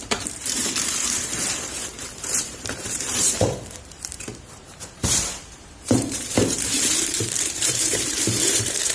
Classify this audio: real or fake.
fake